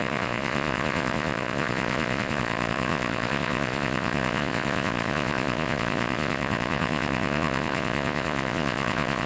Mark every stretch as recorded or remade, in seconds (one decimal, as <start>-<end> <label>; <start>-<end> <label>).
0.0-9.3 remade